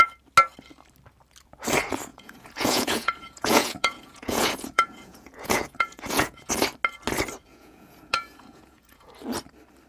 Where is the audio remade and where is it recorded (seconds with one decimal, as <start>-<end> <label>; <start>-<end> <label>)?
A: 0.0-2.1 recorded; 2.1-6.5 remade; 6.5-7.5 recorded; 7.5-9.1 remade; 9.1-9.9 recorded

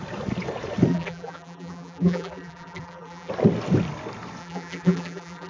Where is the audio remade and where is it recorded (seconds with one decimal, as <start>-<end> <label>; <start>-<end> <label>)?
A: 0.0-0.9 recorded; 0.9-3.3 remade; 3.3-4.4 recorded; 4.4-5.5 remade

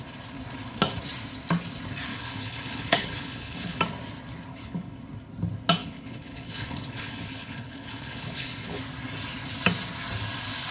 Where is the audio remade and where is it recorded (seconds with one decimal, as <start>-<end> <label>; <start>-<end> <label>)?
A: 0.0-2.1 recorded; 2.1-3.8 remade; 3.8-4.5 recorded; 4.5-5.0 remade; 5.0-5.8 recorded; 5.8-8.8 remade; 8.8-10.7 recorded

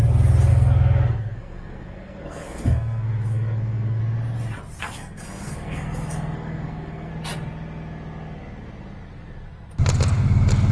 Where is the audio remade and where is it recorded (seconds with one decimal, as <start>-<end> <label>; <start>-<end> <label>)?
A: 0.0-0.5 recorded; 0.5-4.0 remade; 4.0-4.8 recorded; 4.8-7.1 remade; 7.1-10.7 recorded

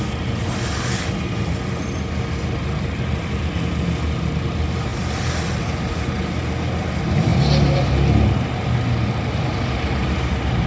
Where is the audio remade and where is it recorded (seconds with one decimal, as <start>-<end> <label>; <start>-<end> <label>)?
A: 0.0-10.7 recorded

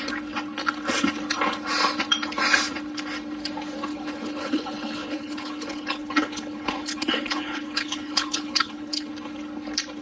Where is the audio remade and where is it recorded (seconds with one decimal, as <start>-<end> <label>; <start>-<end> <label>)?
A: 0.0-3.9 recorded; 3.9-9.1 remade; 9.1-10.0 recorded

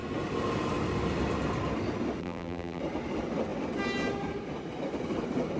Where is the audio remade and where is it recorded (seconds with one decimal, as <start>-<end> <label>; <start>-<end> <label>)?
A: 0.0-2.2 recorded; 2.2-2.8 remade; 2.8-5.6 recorded

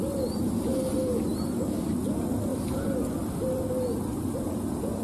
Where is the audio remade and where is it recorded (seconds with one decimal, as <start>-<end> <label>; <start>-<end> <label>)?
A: 0.0-5.0 recorded